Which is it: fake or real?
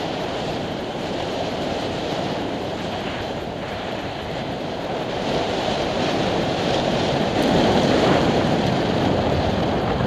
fake